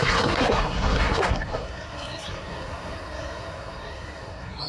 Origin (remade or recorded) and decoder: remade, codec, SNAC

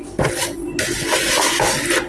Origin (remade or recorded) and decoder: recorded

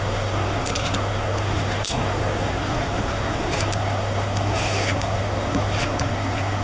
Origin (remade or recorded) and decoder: remade, codec, SNAC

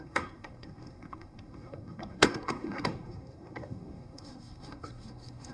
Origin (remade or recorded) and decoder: remade, codec, SNAC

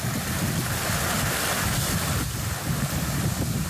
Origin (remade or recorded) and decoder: recorded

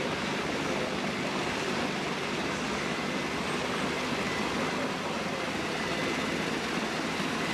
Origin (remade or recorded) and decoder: recorded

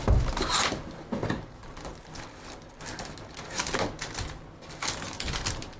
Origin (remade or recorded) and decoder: recorded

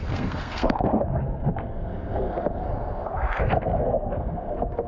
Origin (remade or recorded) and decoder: remade, codec, SNAC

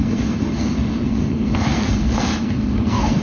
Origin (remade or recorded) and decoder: remade, codec, SNAC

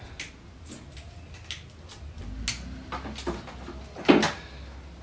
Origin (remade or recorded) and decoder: recorded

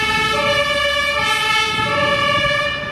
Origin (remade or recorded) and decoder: recorded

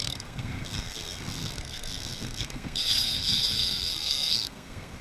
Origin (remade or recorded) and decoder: remade, codec, SNAC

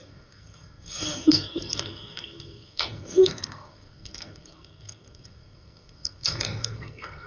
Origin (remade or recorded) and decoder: remade, codec, SNAC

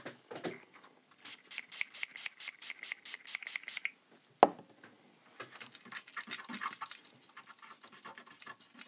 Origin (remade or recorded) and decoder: recorded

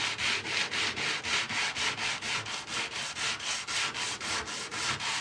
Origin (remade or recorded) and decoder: recorded